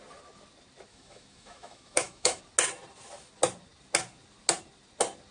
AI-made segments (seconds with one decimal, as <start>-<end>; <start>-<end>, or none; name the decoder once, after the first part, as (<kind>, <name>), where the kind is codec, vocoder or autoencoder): 0.9-2.4 (autoencoder, DAC-VAE)

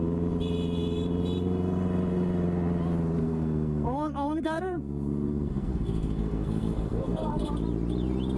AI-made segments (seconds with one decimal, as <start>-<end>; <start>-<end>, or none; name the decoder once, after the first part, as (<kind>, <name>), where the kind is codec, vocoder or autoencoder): 3.2-7.5 (codec, SNAC)